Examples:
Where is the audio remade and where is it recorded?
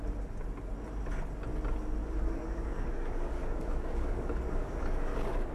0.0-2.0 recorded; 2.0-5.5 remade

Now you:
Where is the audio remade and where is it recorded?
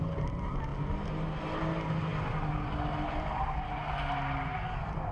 0.0-5.1 recorded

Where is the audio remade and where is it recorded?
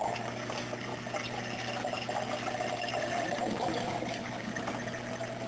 0.0-0.9 remade; 0.9-3.5 recorded; 3.5-4.5 remade; 4.5-5.5 recorded